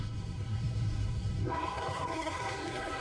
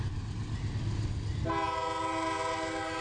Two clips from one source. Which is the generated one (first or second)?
first